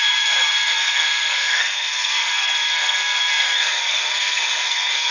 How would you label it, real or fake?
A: fake